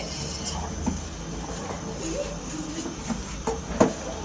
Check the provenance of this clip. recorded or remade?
recorded